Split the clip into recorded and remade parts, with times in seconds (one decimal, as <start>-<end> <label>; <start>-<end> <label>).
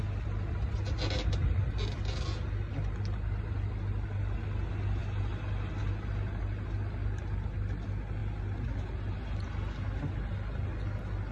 0.0-11.3 recorded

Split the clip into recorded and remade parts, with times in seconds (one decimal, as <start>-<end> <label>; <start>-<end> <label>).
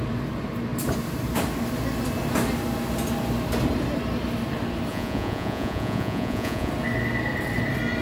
0.0-4.9 recorded; 4.9-6.7 remade; 6.7-8.0 recorded